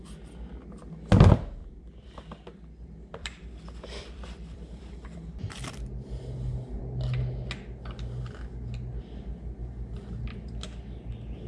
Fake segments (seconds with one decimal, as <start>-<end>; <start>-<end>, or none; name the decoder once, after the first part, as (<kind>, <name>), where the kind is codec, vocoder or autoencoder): 1.6-6.5 (vocoder, BigVGAN v2)